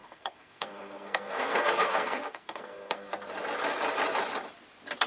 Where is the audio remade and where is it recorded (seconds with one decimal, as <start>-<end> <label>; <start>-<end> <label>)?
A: 0.0-3.1 remade; 3.1-5.1 recorded